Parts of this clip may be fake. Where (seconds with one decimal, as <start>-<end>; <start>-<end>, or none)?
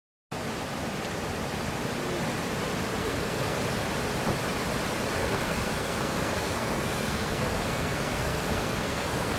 3.0-3.6; 5.2-9.4